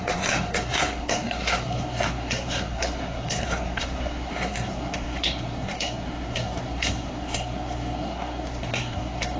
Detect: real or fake fake